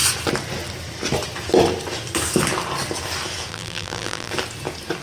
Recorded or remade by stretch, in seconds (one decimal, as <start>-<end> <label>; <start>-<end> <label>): 0.0-3.5 recorded; 3.5-4.3 remade; 4.3-5.0 recorded